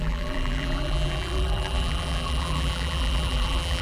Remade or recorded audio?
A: remade